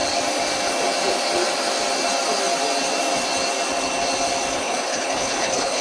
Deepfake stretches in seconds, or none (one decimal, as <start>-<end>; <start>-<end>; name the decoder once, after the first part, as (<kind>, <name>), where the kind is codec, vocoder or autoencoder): 4.5-5.8 (codec, HILCodec)